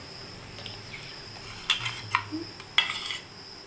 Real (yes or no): yes